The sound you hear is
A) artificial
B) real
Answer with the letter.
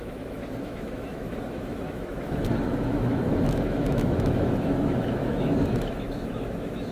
A